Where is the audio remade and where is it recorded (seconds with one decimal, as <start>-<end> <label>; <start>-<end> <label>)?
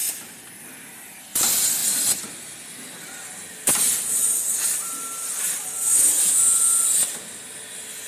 0.0-8.1 recorded